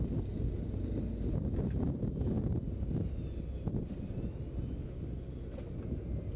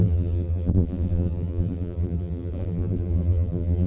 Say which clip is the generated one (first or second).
second